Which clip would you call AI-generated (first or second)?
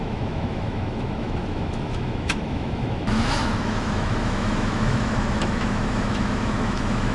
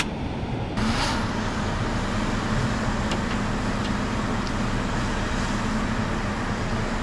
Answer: first